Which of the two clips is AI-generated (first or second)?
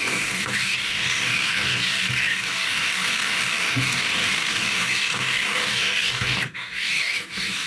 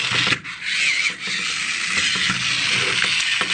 first